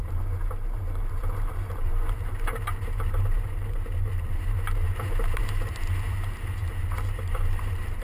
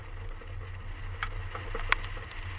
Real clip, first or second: second